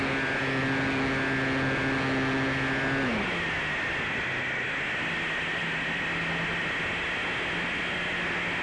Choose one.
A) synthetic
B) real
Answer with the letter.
B